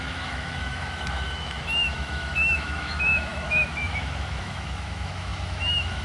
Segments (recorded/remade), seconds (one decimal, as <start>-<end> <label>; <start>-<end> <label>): 0.0-6.0 remade